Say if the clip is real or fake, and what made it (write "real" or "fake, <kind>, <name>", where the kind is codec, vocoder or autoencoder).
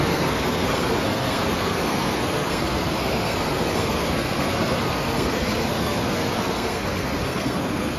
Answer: fake, codec, SNAC